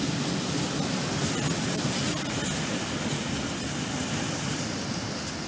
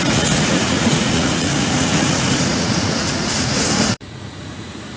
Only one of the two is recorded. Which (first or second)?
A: first